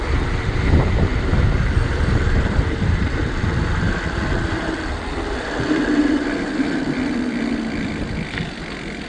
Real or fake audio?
fake